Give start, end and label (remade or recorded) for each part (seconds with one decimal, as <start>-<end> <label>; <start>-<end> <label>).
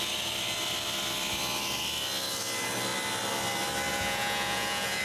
0.0-3.9 recorded; 3.9-5.0 remade